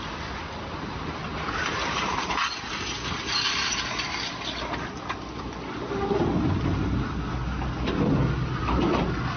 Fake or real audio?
real